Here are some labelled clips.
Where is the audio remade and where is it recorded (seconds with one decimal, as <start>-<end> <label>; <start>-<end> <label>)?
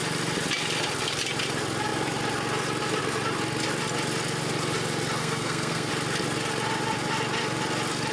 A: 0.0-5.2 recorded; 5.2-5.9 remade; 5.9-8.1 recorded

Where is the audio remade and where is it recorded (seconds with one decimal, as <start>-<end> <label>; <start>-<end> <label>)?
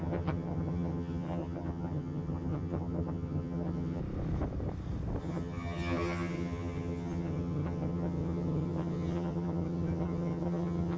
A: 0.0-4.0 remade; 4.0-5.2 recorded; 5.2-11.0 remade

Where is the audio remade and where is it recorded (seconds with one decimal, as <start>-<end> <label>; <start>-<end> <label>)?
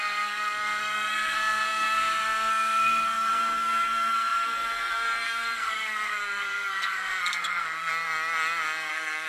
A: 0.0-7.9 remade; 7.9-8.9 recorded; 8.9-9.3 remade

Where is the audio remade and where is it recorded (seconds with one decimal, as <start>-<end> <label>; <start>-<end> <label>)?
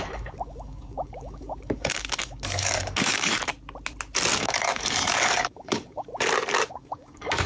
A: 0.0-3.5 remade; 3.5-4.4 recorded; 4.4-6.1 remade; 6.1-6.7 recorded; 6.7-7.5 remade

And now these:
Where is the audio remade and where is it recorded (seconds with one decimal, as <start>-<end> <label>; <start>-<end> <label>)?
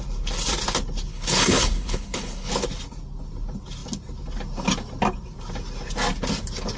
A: 0.0-1.1 recorded; 1.1-2.5 remade; 2.5-6.8 recorded